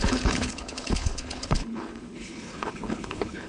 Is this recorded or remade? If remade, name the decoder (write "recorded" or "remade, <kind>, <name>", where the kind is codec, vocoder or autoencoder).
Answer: remade, codec, HILCodec